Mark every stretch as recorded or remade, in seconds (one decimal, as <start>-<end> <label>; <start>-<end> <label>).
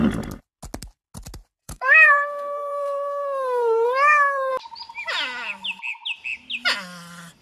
0.0-1.6 recorded; 1.6-4.5 remade; 4.5-7.4 recorded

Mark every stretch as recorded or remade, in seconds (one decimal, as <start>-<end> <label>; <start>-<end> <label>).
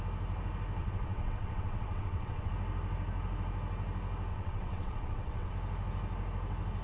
0.0-0.8 recorded; 0.8-2.5 remade; 2.5-4.3 recorded; 4.3-5.5 remade; 5.5-6.8 recorded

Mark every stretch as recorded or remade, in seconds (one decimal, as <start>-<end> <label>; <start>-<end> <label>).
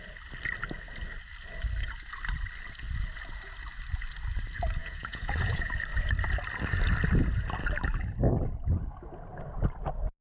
0.0-4.8 recorded; 4.8-5.7 remade; 5.7-10.2 recorded